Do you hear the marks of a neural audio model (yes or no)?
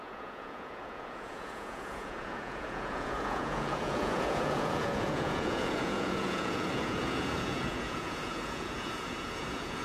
yes